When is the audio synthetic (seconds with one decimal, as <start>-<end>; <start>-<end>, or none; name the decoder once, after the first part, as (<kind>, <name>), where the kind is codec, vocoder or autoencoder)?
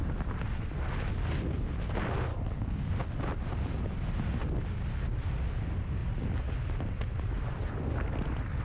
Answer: 2.3-2.9 (codec, DAC)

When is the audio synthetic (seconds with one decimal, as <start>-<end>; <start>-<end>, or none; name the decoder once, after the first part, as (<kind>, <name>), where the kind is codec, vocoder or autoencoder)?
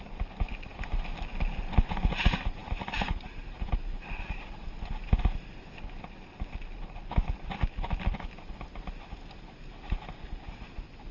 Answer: none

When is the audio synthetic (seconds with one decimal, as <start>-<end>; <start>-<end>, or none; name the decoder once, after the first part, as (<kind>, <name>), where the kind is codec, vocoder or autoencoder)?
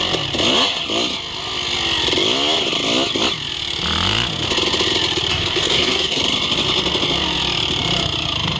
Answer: 5.3-6.2 (codec, DAC)